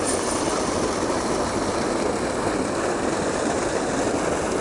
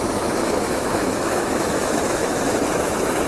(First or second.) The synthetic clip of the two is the second